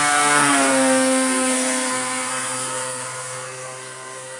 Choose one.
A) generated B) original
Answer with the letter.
A